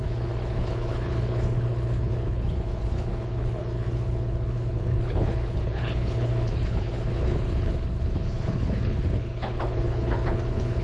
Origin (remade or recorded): remade